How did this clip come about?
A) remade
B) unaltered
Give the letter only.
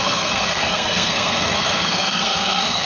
A